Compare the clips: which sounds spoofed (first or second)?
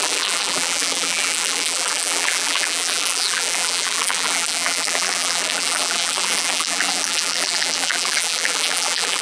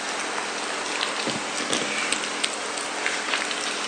first